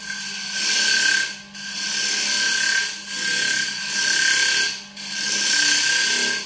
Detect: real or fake real